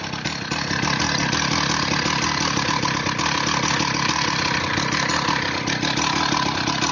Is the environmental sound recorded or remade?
recorded